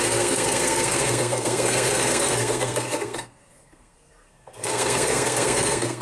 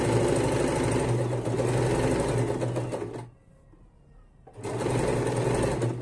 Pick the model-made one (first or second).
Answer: first